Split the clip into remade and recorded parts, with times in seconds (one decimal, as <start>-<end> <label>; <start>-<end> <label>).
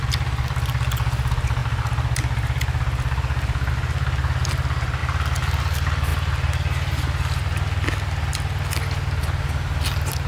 0.0-10.3 recorded